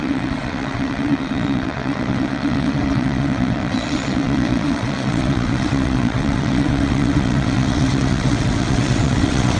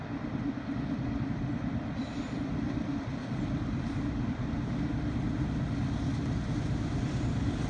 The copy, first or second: first